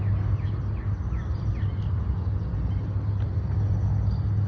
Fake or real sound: real